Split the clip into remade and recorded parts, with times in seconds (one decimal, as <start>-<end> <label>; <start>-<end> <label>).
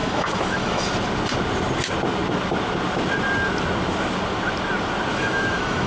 0.0-0.8 remade; 0.8-5.1 recorded; 5.1-5.9 remade